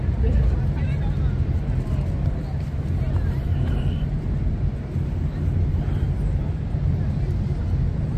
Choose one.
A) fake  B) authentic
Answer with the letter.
B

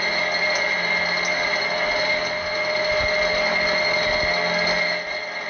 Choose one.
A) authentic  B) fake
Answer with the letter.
A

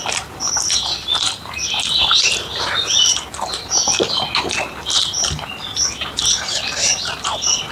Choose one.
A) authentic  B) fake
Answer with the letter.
A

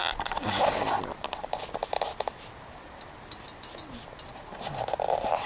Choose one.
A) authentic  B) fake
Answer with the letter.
A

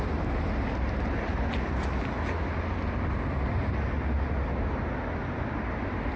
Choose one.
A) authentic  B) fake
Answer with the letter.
A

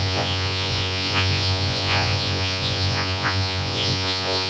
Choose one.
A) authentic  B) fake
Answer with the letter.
B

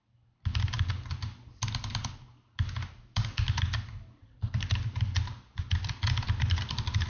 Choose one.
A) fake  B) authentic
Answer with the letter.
B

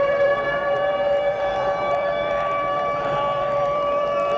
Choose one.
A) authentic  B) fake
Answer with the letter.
B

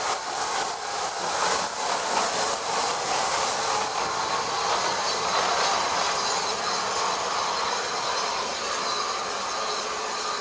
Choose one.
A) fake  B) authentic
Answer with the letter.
B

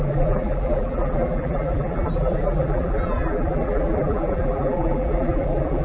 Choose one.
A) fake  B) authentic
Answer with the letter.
A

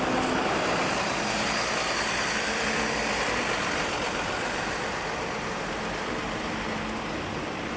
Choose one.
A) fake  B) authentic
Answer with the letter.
B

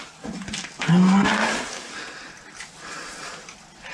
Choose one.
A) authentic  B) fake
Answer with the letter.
A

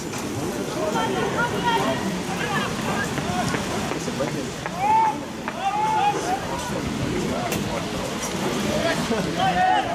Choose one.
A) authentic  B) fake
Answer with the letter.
A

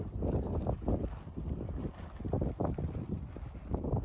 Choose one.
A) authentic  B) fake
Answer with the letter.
A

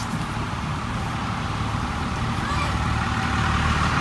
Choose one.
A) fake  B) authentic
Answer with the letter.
A